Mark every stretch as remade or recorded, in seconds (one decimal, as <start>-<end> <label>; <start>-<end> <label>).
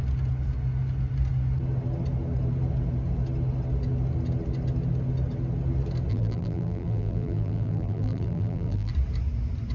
0.0-6.1 recorded; 6.1-8.9 remade; 8.9-9.7 recorded